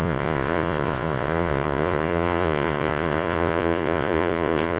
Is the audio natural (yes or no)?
no